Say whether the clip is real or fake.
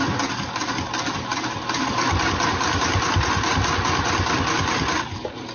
real